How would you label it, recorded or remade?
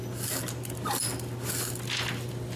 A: recorded